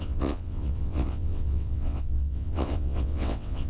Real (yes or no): no